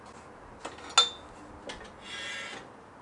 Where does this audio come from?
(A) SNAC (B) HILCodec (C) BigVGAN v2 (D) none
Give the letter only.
D